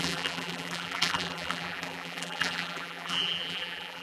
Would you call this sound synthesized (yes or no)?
yes